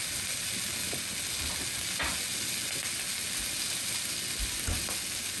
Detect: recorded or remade recorded